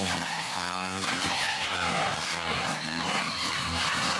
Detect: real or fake fake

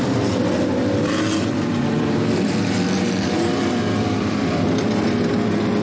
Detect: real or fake fake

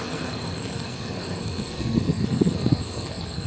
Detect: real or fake fake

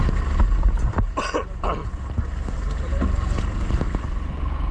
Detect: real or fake real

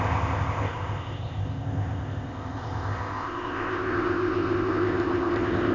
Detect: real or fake fake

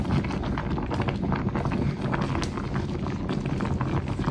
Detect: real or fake real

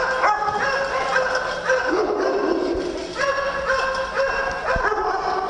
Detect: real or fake real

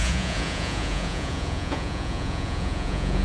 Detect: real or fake fake